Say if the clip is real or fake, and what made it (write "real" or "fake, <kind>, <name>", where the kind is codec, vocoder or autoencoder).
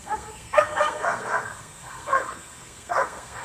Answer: fake, codec, SNAC